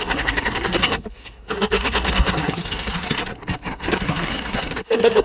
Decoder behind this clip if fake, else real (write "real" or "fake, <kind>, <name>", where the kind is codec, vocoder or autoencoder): fake, codec, SNAC